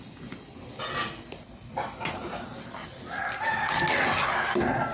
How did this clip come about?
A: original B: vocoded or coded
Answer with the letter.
A